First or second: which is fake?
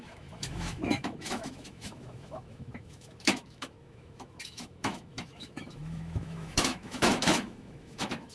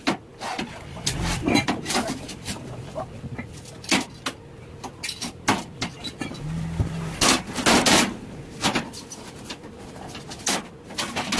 first